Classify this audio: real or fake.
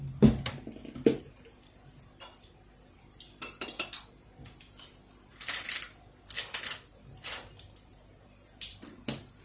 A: real